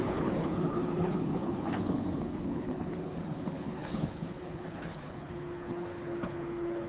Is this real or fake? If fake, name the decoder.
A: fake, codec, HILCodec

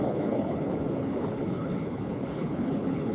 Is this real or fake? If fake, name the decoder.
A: fake, codec, HILCodec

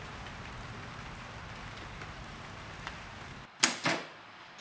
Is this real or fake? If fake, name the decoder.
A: real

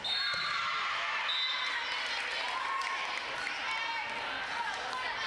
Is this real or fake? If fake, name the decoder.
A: real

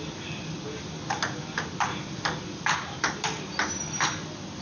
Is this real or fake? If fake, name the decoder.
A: real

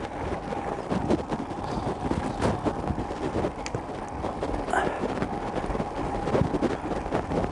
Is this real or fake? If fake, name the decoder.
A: real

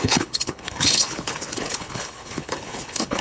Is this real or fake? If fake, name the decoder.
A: fake, codec, HILCodec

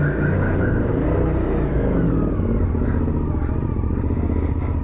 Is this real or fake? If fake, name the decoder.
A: real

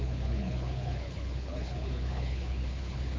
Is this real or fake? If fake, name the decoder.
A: fake, codec, HILCodec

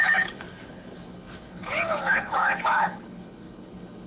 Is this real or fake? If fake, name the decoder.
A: fake, codec, HILCodec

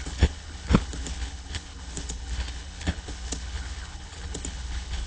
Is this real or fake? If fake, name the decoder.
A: fake, codec, HILCodec